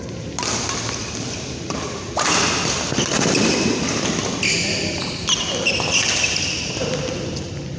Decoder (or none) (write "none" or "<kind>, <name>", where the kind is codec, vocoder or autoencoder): none